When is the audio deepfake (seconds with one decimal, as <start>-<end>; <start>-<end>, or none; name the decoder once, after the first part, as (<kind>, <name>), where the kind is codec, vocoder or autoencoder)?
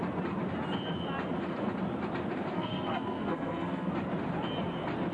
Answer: 2.5-3.9 (codec, SNAC)